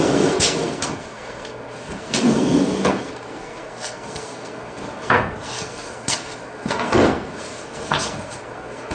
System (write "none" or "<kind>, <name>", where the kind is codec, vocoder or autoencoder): codec, SNAC